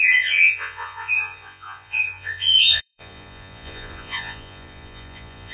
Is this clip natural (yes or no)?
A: no